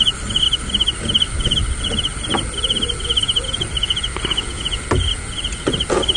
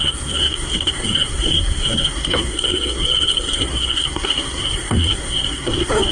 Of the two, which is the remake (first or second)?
second